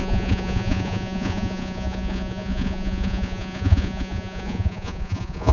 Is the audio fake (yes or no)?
yes